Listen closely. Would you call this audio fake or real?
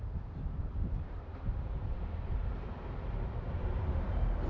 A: fake